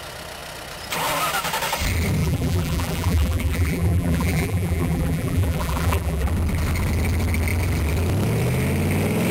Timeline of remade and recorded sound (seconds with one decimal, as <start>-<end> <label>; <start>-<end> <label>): 0.0-2.2 recorded; 2.2-6.3 remade; 6.3-9.3 recorded